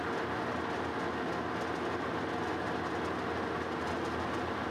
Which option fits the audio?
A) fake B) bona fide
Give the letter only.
B